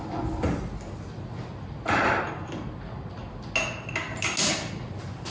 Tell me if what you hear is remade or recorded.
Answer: recorded